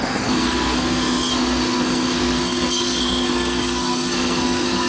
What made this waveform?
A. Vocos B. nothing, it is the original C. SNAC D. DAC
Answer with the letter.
C